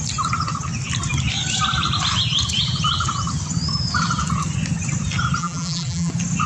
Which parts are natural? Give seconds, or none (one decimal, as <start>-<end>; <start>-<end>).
0.0-5.4; 6.1-6.5